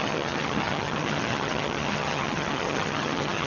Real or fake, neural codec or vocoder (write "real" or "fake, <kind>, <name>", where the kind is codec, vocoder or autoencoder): fake, vocoder, HiFi-GAN